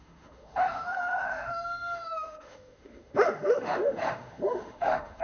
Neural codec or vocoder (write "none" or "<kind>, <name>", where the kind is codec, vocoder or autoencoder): autoencoder, DAC-VAE